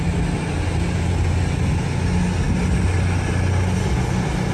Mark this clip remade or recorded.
recorded